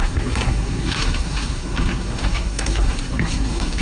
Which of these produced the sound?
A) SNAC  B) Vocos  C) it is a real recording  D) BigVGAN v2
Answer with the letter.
A